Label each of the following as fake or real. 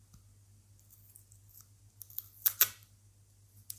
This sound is real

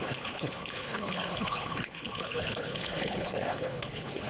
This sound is fake